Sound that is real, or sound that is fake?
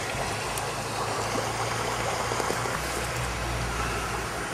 real